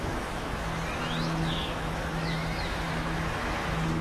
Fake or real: fake